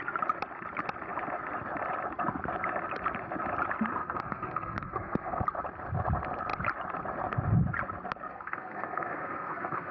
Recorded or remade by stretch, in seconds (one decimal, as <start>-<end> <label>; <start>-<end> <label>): 0.0-4.0 recorded; 4.0-5.4 remade; 5.4-8.3 recorded; 8.3-9.9 remade